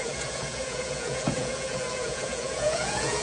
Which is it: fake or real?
fake